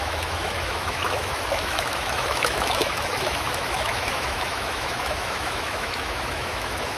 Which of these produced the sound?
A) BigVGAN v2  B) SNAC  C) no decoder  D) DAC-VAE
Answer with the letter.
D